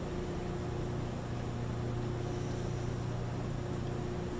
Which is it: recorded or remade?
recorded